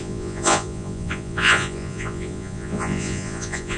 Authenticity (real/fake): fake